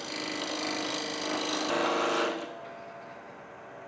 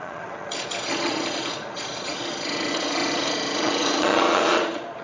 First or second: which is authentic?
first